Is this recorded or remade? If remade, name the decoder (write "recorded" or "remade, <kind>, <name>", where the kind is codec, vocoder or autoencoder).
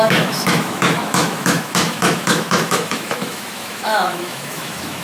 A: remade, autoencoder, DAC-VAE